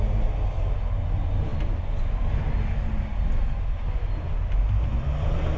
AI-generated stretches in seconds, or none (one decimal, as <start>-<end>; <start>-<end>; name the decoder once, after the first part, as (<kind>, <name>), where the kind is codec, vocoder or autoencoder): none